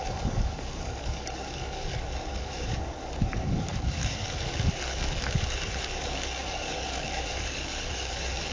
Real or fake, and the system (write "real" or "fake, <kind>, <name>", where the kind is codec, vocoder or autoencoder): fake, codec, DAC